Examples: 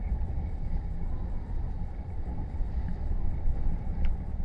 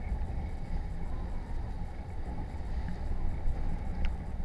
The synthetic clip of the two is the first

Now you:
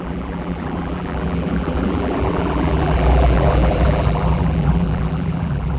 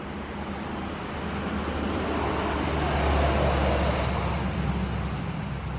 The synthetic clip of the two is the first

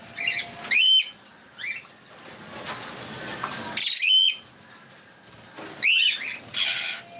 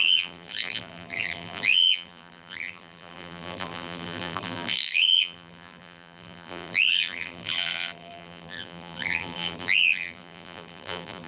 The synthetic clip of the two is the second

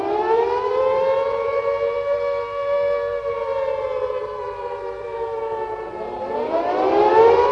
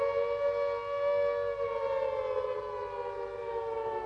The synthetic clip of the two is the first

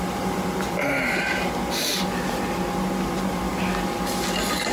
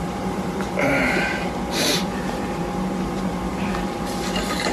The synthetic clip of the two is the second